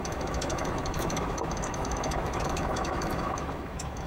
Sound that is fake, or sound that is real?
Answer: fake